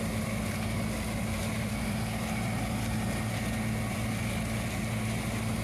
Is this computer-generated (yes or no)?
no